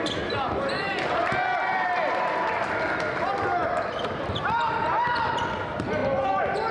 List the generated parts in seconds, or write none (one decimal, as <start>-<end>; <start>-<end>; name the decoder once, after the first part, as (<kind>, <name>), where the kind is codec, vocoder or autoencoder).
none